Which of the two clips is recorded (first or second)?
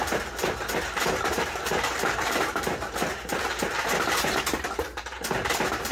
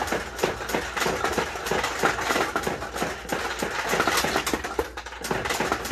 second